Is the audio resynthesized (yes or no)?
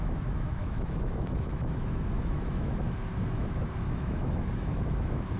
yes